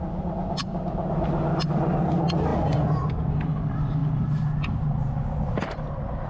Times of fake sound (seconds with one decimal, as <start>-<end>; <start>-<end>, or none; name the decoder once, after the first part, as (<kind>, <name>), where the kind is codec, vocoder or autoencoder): none